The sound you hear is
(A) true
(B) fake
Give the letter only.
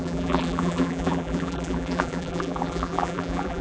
B